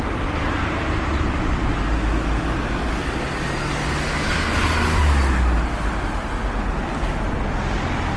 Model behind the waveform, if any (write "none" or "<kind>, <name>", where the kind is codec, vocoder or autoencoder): none